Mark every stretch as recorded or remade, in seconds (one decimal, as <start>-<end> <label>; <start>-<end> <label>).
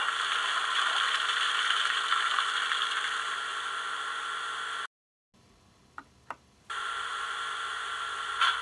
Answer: 0.0-8.6 recorded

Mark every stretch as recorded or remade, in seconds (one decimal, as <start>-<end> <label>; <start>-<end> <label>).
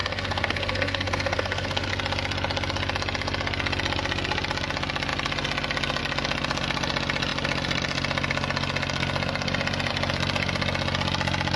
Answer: 0.0-1.9 remade; 1.9-11.6 recorded